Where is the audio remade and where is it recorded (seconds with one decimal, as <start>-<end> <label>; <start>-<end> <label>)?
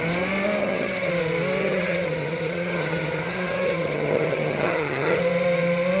0.0-0.6 recorded; 0.6-1.1 remade; 1.1-1.6 recorded; 1.6-5.2 remade; 5.2-6.0 recorded